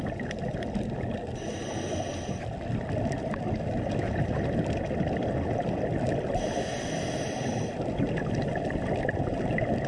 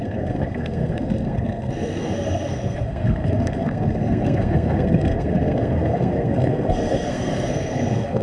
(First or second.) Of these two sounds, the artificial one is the second